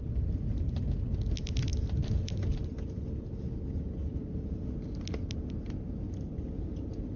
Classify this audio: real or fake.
real